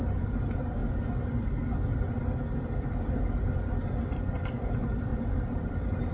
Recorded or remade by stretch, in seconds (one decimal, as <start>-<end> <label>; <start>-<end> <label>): 0.0-0.8 remade; 0.8-4.1 recorded; 4.1-6.1 remade